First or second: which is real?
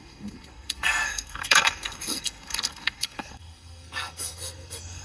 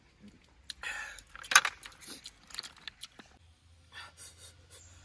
second